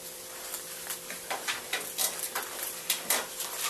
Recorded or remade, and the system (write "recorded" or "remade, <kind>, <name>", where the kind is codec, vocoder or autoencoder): remade, vocoder, BigVGAN v2